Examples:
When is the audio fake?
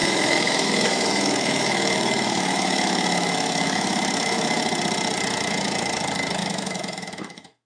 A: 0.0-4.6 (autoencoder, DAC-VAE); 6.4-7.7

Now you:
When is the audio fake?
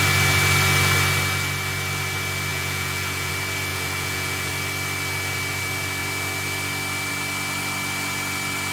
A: 2.5-3.3 (vocoder, Vocos); 3.7-4.5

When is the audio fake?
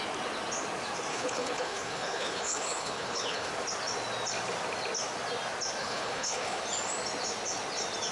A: 1.1-3.5 (codec, HILCodec); 5.8-6.6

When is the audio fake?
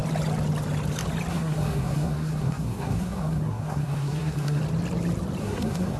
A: 1.3-4.6 (codec, SNAC); 5.4-6.0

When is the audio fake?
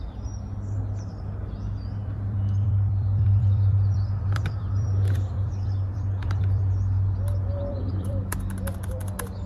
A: 2.0-6.7 (vocoder, BigVGAN v2); 7.5-8.2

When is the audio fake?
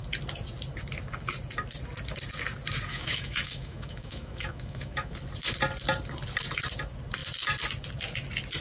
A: 2.9-5.1 (autoencoder, DAC-VAE)